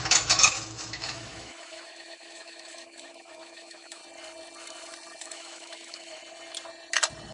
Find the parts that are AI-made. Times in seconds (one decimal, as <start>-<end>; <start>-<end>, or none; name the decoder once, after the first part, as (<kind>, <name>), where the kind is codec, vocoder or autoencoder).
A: 0.0-4.0 (autoencoder, DAC-VAE); 5.2-6.2